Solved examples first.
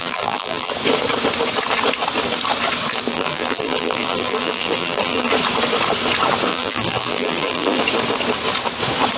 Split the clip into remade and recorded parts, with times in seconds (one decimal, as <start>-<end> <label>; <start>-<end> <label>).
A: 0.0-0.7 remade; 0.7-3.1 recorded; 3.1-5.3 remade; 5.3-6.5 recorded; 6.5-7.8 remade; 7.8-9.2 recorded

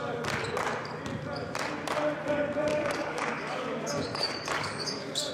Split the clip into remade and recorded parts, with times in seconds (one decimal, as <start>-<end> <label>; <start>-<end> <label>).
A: 0.0-2.7 recorded; 2.7-5.3 remade

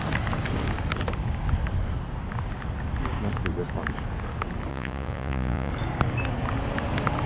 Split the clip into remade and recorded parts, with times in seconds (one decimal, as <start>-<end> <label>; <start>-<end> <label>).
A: 0.0-4.7 recorded; 4.7-5.7 remade; 5.7-7.3 recorded